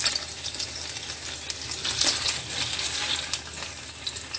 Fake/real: real